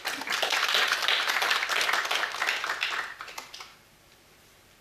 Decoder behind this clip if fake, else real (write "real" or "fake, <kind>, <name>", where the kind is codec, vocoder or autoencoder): real